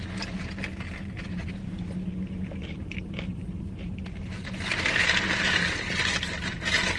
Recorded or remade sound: recorded